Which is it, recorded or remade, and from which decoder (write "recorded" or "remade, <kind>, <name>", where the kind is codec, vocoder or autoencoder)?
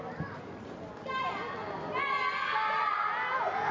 recorded